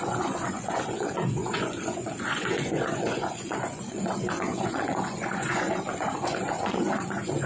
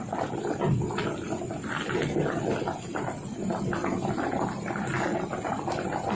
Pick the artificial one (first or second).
first